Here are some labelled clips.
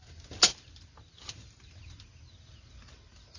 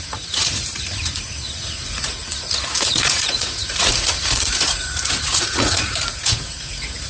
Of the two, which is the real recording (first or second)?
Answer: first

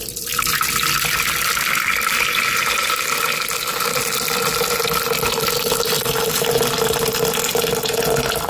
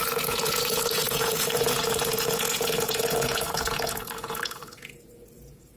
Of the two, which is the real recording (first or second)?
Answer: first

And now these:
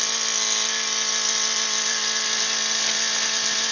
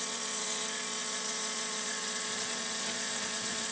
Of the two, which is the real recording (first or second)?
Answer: first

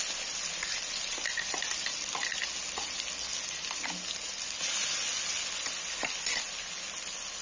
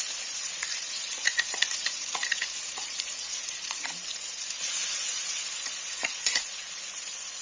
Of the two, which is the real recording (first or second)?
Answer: first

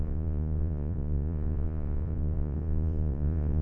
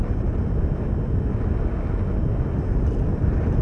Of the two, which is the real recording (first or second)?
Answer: second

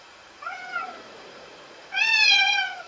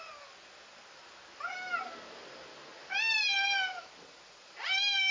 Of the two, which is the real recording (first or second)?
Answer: second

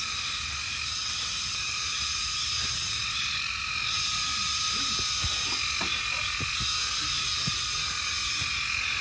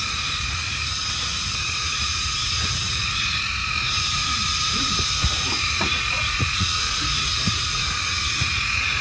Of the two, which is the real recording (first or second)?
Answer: first